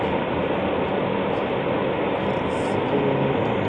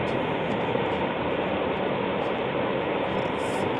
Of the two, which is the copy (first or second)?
second